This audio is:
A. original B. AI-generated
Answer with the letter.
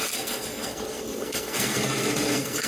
B